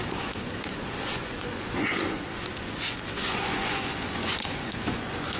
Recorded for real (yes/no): no